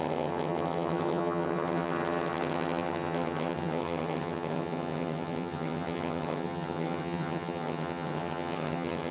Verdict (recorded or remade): remade